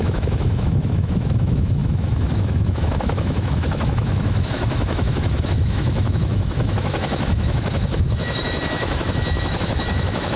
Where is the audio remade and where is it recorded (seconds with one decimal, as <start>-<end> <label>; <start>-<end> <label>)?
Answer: 0.0-10.4 remade